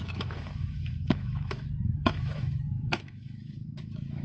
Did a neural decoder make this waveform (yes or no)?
yes